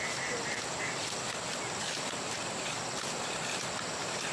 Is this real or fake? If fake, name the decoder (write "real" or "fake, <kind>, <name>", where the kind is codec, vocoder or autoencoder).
real